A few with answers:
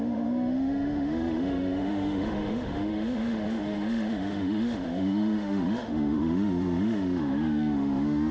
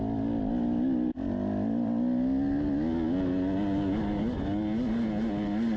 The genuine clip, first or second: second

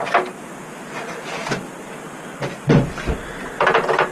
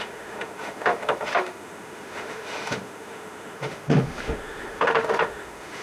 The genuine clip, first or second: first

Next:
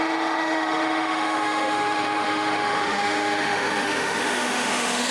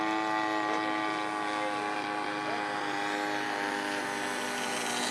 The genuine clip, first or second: second